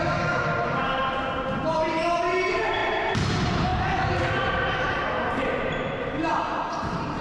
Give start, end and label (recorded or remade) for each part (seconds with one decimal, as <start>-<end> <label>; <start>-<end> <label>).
0.0-3.7 remade; 3.7-4.4 recorded; 4.4-7.2 remade